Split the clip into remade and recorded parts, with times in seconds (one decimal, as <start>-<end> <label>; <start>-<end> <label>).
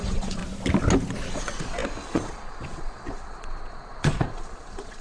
0.0-0.4 remade; 0.4-1.3 recorded; 1.3-5.0 remade